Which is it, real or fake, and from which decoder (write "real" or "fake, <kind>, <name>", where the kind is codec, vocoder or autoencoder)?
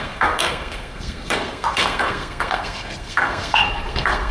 fake, codec, SNAC